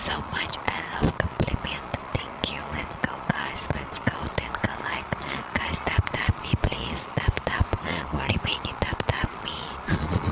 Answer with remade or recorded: remade